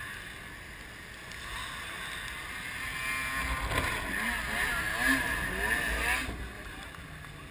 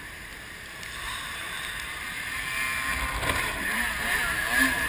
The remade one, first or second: second